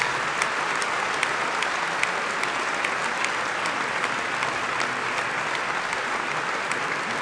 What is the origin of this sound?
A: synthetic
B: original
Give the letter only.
B